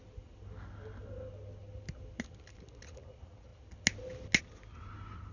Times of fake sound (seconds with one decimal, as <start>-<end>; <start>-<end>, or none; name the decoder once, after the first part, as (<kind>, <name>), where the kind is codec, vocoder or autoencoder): none